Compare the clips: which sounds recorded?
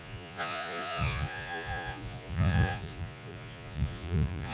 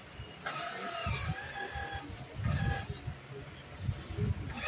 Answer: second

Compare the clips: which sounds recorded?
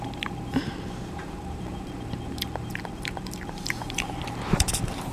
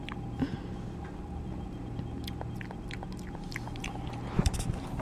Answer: second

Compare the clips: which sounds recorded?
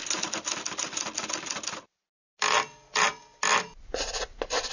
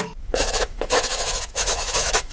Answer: first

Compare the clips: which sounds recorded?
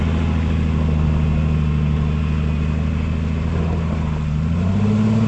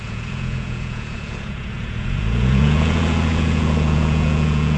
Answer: first